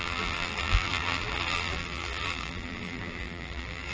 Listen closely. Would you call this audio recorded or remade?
remade